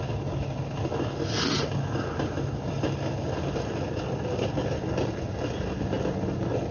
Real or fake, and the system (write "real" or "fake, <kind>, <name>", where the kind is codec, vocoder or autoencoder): real